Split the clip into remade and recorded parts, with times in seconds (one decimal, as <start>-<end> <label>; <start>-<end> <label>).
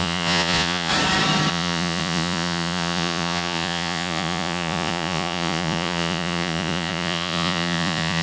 0.0-0.9 remade; 0.9-1.5 recorded; 1.5-8.2 remade